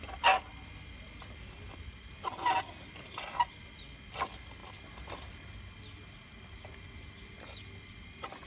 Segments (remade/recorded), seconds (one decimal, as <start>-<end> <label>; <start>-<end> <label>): 0.0-8.5 recorded